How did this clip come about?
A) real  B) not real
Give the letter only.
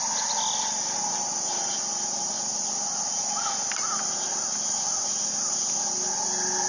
A